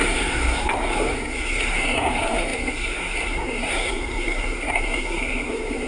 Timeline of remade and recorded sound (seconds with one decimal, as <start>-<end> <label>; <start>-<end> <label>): 0.0-5.9 remade